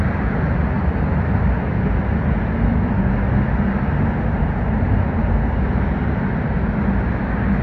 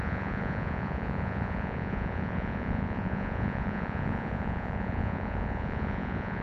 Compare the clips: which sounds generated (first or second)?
second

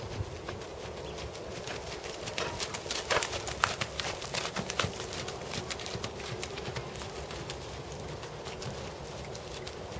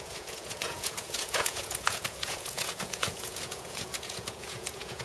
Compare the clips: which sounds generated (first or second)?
second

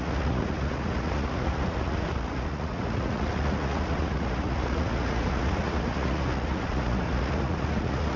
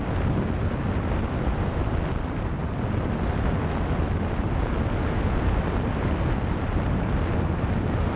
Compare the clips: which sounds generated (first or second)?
first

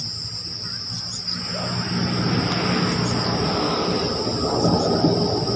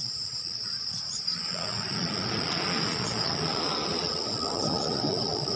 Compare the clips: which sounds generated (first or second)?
second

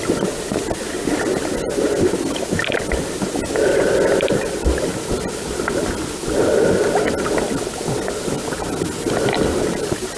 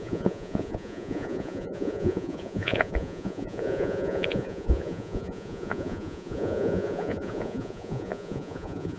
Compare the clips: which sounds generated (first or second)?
second